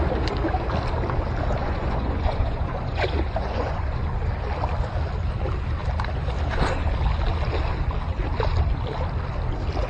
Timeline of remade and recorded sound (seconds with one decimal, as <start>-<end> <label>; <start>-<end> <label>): 0.0-1.6 recorded; 1.6-4.0 remade; 4.0-9.9 recorded